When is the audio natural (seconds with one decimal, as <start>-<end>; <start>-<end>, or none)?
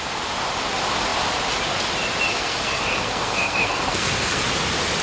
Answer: 0.0-2.3; 4.4-5.0